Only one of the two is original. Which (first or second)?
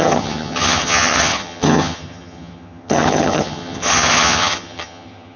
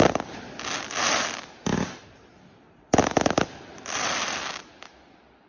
second